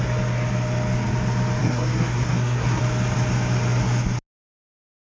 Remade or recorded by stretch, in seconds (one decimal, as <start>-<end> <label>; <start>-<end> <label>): 0.0-1.6 recorded; 1.6-2.8 remade; 2.8-5.2 recorded